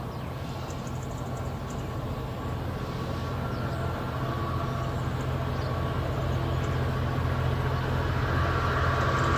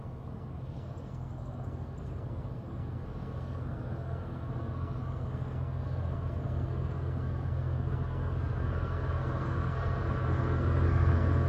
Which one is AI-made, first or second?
second